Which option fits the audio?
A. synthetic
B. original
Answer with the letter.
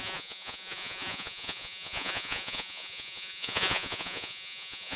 A